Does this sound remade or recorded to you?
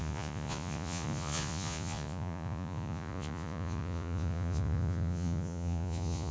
remade